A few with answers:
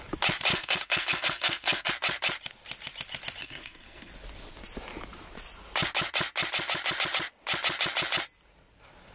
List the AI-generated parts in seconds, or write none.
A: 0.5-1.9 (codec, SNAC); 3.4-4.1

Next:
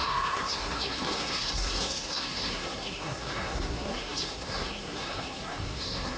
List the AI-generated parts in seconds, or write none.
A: 0.0-6.2 (codec, SNAC)

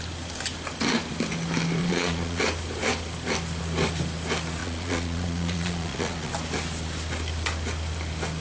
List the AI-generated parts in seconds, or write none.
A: 1.8-2.4 (vocoder, Vocos); 4.6-6.3

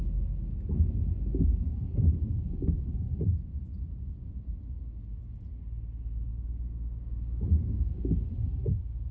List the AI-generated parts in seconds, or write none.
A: 1.5-2.8 (codec, DAC); 6.3-8.0